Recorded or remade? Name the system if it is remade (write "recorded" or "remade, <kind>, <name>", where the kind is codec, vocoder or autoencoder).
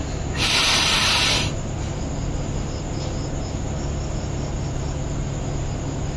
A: recorded